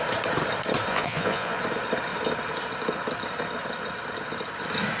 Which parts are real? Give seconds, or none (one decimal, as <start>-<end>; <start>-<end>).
0.0-0.9; 1.6-5.0